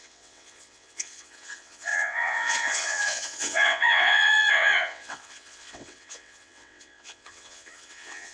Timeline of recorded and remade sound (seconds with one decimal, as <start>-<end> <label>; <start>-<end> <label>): 0.0-8.3 remade